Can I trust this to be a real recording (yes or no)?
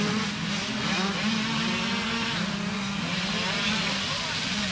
yes